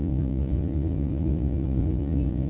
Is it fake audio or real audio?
fake